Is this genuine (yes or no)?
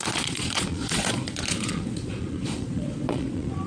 no